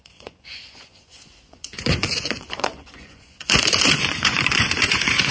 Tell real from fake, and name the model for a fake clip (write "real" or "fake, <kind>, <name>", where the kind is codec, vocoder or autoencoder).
fake, vocoder, Vocos